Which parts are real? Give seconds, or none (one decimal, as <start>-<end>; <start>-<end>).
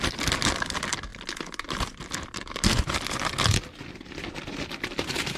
0.0-5.4